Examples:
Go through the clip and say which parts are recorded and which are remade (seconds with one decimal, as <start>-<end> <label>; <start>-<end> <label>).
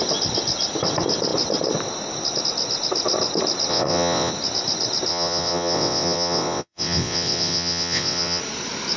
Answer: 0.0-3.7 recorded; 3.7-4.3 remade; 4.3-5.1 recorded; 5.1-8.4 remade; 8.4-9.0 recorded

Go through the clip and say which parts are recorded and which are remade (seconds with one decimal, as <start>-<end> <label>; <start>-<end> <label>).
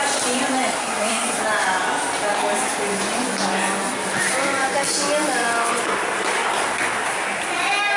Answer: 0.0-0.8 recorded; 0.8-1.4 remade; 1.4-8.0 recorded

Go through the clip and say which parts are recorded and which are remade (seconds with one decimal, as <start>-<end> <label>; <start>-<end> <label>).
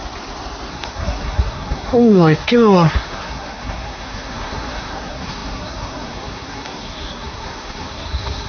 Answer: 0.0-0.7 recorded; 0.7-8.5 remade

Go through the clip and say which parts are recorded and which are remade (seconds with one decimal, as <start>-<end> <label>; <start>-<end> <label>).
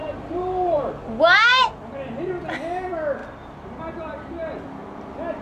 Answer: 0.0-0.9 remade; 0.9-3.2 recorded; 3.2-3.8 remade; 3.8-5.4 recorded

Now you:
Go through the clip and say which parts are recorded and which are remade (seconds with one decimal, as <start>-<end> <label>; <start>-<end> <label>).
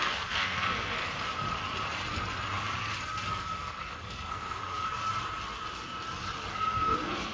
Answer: 0.0-1.0 remade; 1.0-3.3 recorded; 3.3-5.0 remade; 5.0-6.5 recorded; 6.5-7.3 remade